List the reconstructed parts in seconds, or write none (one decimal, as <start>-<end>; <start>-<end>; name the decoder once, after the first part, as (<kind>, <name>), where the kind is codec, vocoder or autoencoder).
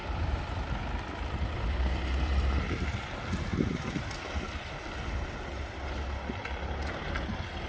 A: 0.0-2.6 (vocoder, BigVGAN v2); 3.5-4.8